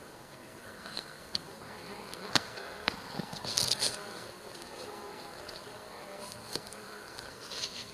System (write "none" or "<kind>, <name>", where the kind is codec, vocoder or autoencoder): codec, SNAC